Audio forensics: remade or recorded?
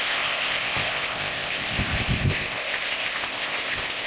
remade